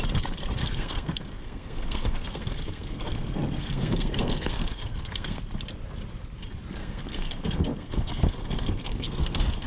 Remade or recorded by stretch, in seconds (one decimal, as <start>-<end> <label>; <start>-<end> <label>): 0.0-0.6 recorded; 0.6-5.4 remade; 5.4-6.8 recorded; 6.8-9.7 remade